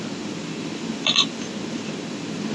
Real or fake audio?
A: real